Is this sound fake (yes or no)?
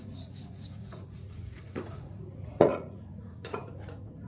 yes